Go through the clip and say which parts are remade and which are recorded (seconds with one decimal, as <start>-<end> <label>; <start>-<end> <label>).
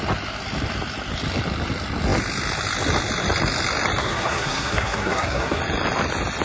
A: 0.0-4.0 recorded; 4.0-5.6 remade; 5.6-6.4 recorded